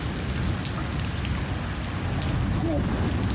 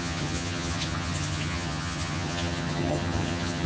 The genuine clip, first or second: first